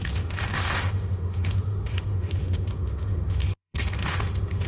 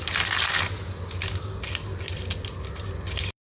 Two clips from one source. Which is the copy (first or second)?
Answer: first